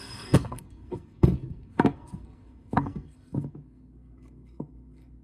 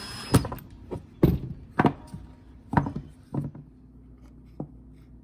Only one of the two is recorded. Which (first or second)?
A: second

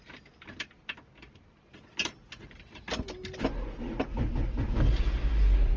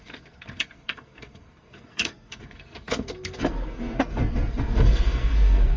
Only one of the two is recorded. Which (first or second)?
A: first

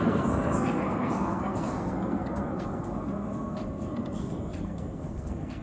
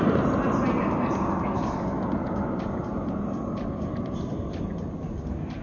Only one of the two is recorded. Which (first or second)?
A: second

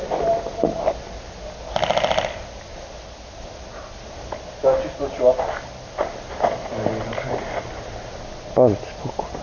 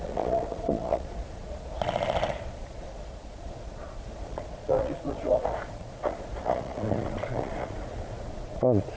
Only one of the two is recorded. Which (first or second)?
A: first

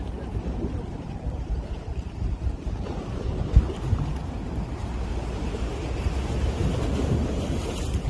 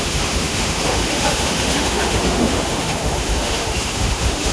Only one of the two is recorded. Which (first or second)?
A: first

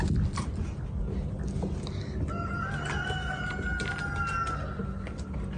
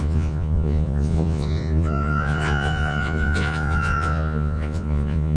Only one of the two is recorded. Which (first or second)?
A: first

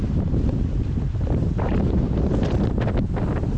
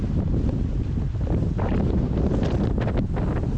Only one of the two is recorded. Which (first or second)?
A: second